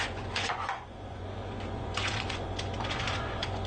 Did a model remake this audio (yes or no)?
yes